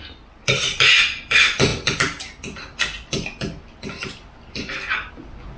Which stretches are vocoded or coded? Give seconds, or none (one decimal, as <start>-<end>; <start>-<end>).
none